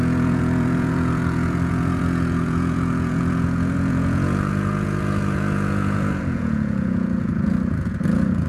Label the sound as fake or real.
fake